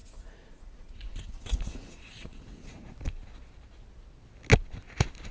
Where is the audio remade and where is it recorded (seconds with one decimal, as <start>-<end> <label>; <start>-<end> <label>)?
0.0-2.9 remade; 2.9-5.3 recorded